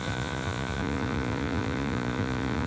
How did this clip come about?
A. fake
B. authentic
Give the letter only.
A